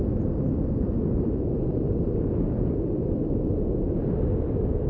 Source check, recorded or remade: recorded